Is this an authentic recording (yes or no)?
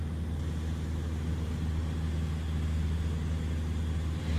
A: yes